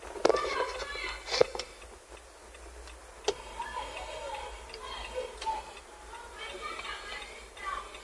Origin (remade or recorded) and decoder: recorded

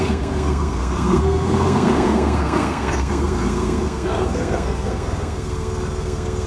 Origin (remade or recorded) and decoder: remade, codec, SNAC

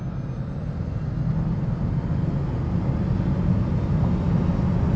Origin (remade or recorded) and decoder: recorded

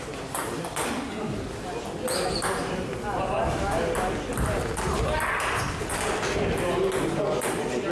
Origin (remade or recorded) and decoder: recorded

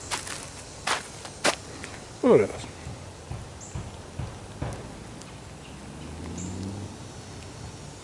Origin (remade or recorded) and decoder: recorded